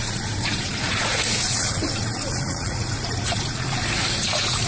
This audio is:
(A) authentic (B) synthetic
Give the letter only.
B